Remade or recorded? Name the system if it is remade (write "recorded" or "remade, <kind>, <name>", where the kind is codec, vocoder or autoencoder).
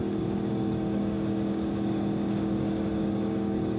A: remade, codec, DAC